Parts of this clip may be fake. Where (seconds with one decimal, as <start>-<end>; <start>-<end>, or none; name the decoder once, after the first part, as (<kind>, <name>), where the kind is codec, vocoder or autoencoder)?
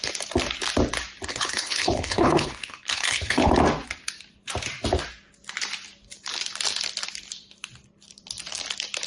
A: 1.3-3.5 (codec, HILCodec)